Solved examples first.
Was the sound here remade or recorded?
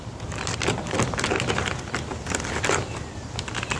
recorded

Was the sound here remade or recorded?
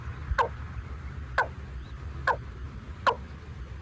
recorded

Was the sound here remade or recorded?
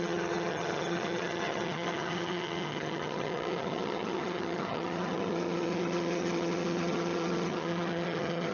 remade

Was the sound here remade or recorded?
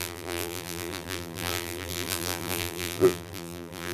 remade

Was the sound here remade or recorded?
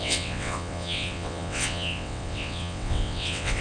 remade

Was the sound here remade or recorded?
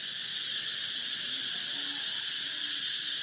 recorded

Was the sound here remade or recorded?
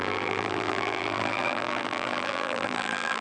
remade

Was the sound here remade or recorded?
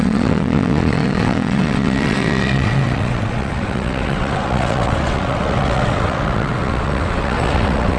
remade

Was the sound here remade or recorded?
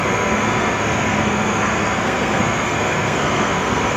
remade